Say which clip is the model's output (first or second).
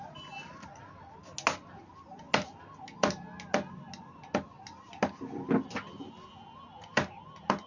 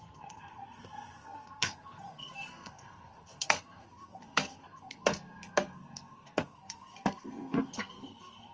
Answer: second